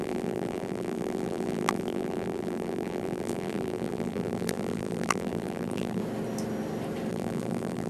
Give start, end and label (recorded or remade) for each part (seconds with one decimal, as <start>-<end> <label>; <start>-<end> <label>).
0.0-6.0 remade; 6.0-7.1 recorded; 7.1-7.9 remade

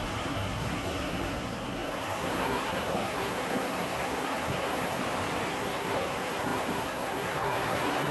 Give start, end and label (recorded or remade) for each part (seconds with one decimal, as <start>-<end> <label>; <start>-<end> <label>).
0.0-5.0 remade; 5.0-5.5 recorded; 5.5-8.1 remade

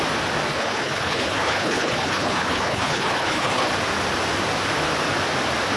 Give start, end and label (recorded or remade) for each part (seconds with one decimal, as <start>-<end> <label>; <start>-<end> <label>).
0.0-0.5 recorded; 0.5-3.7 remade; 3.7-5.8 recorded

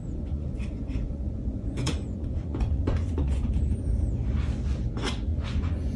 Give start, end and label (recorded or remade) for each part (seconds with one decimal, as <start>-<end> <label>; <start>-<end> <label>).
0.0-3.5 remade; 3.5-5.3 recorded; 5.3-6.0 remade

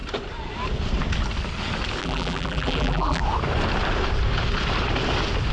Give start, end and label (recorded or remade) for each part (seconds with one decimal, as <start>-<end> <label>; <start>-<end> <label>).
0.0-2.0 recorded; 2.0-3.2 remade; 3.2-5.5 recorded

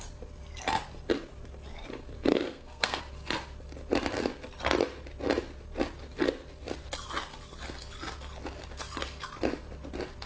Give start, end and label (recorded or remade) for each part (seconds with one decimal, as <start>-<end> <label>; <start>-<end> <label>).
0.0-2.3 recorded; 2.3-3.0 remade; 3.0-10.3 recorded

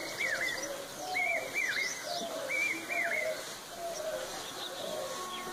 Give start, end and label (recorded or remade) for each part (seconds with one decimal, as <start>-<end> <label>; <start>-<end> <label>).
0.0-3.3 remade; 3.3-5.5 recorded